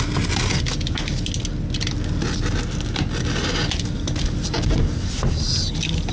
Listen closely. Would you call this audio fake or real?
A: real